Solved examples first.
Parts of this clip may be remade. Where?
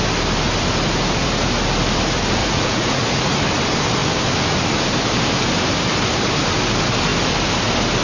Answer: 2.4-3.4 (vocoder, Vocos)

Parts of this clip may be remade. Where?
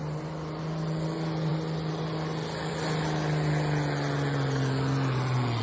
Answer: none